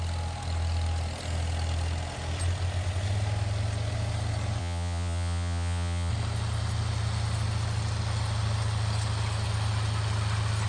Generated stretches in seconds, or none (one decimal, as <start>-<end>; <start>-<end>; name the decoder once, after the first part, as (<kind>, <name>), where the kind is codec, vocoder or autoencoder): 4.6-6.1 (vocoder, Vocos)